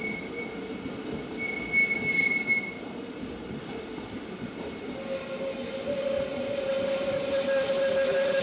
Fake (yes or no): no